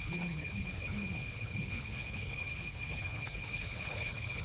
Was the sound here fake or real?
fake